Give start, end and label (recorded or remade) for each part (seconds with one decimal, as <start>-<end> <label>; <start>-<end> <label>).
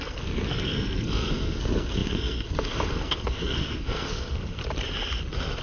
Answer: 0.0-4.6 remade; 4.6-5.6 recorded